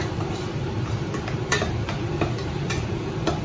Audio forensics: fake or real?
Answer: real